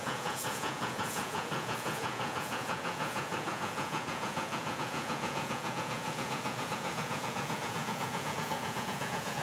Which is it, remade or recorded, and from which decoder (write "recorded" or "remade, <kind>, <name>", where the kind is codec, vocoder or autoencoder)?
remade, vocoder, Vocos